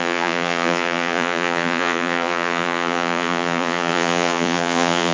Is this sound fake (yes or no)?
yes